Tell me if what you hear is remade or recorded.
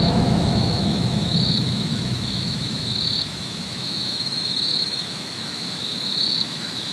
remade